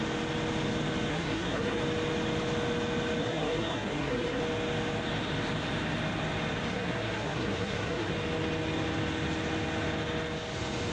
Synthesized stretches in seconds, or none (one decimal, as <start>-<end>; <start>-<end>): 1.1-1.8; 3.2-4.4; 6.7-8.1

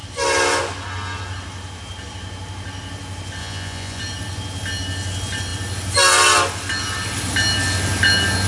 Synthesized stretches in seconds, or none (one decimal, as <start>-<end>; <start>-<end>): 3.4-4.0

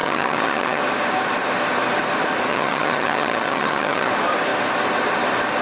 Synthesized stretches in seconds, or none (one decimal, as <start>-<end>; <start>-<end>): 0.0-0.8; 2.5-4.1